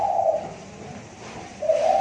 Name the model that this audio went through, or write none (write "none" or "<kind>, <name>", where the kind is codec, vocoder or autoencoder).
none